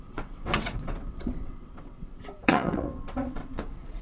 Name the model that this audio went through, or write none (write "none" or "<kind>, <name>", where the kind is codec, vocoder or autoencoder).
vocoder, WaveNeXt